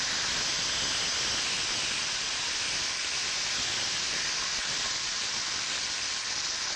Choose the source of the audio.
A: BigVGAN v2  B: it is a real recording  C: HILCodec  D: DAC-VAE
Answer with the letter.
B